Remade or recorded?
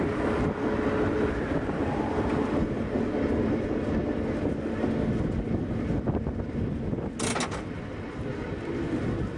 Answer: recorded